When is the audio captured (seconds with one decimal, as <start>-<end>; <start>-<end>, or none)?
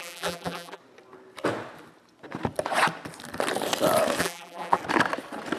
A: 0.8-4.2; 4.8-5.6